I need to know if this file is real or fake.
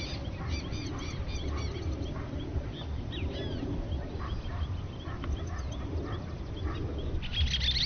real